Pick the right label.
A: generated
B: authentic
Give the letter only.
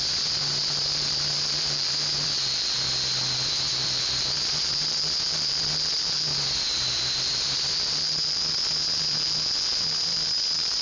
A